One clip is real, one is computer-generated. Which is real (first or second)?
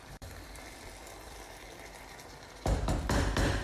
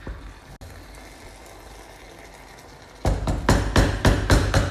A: second